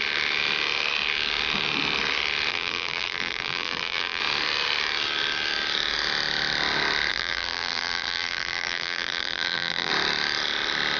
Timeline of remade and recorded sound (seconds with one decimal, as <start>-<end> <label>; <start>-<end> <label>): 0.0-2.5 recorded; 2.5-4.2 remade; 4.2-7.1 recorded; 7.1-9.9 remade; 9.9-11.0 recorded

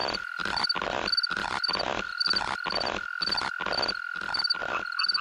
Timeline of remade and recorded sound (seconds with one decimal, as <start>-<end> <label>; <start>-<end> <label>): 0.0-0.6 remade; 0.6-5.2 recorded